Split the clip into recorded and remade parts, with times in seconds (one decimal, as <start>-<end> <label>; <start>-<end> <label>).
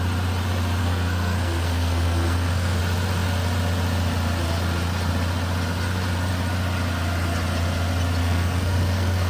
0.0-0.8 recorded; 0.8-2.8 remade; 2.8-8.2 recorded; 8.2-9.3 remade